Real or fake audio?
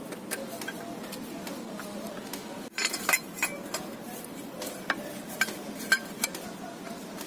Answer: real